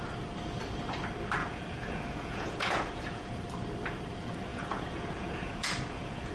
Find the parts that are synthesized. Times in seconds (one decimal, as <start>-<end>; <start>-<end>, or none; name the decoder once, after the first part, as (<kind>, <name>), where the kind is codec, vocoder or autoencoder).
1.4-3.4 (vocoder, Vocos); 4.5-6.3